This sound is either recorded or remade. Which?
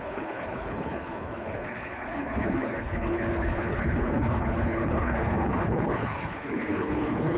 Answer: remade